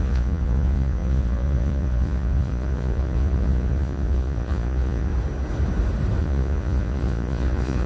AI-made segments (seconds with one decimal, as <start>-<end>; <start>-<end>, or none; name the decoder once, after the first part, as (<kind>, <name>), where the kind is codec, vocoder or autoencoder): 0.0-5.1 (vocoder, Vocos); 6.2-7.9